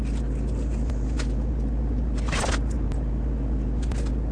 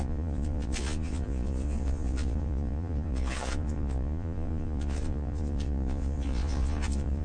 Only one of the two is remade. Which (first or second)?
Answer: second